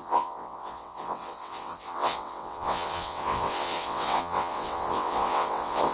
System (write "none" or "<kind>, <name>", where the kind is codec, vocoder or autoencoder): vocoder, WaveNeXt